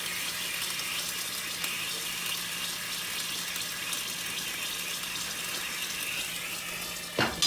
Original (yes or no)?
yes